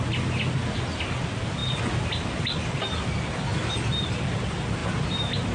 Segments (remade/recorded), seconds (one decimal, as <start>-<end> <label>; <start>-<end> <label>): 0.0-0.6 recorded; 0.6-1.2 remade; 1.2-5.5 recorded